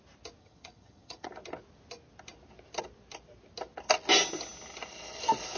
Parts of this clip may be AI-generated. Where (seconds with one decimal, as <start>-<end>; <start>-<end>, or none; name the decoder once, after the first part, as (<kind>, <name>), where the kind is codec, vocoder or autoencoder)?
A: 0.4-1.3 (vocoder, HiFi-GAN)